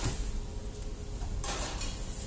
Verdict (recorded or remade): recorded